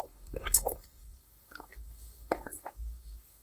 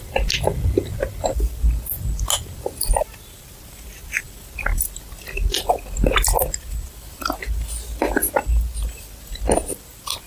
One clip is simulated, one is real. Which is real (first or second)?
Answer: second